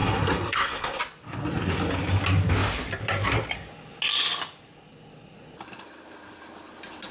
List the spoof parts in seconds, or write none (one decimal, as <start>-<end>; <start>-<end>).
0.0-1.0